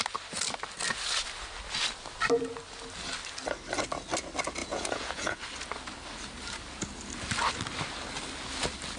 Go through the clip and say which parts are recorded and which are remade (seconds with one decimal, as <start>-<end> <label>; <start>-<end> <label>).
0.0-4.6 recorded; 4.6-5.4 remade; 5.4-9.0 recorded